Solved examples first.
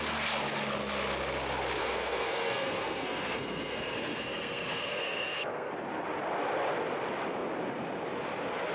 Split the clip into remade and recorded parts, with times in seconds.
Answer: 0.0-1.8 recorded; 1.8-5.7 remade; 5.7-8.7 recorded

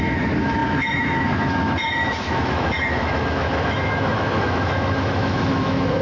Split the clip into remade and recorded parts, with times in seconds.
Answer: 0.0-6.0 remade

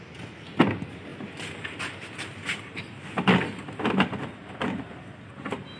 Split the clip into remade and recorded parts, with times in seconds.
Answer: 0.0-5.8 recorded

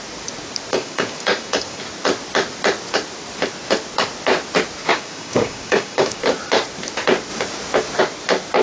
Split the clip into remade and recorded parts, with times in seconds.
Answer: 0.0-0.7 recorded; 0.7-1.8 remade; 1.8-4.9 recorded; 4.9-6.2 remade; 6.2-8.6 recorded